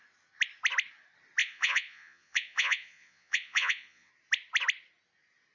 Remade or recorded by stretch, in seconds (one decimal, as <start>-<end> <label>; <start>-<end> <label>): 0.0-1.4 recorded; 1.4-4.1 remade; 4.1-5.5 recorded